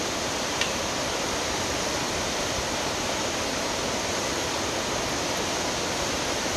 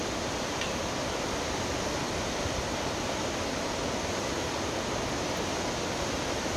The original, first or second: second